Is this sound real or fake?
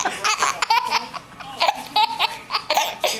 real